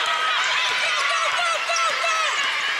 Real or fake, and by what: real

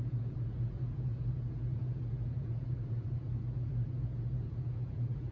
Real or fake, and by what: fake, vocoder, Vocos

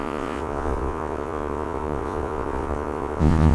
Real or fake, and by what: fake, vocoder, Vocos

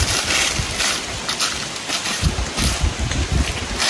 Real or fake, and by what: real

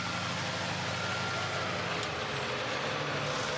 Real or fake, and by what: real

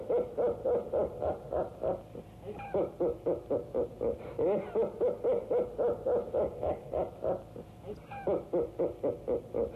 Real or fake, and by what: real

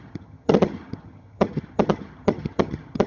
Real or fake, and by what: fake, vocoder, HiFi-GAN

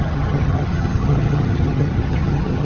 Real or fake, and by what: fake, vocoder, HiFi-GAN